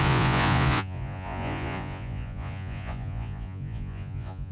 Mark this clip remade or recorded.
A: remade